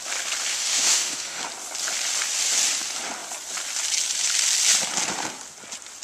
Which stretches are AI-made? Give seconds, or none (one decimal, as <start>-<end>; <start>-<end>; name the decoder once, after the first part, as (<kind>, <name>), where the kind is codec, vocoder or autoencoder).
0.5-1.4 (autoencoder, DAC-VAE)